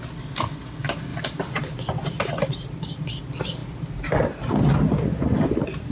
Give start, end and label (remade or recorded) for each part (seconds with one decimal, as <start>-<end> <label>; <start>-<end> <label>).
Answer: 0.0-5.9 recorded